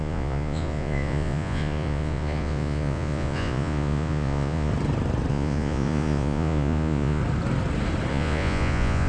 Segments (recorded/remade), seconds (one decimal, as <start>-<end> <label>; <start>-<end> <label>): 0.0-4.7 remade; 4.7-5.3 recorded; 5.3-7.2 remade; 7.2-8.1 recorded; 8.1-9.1 remade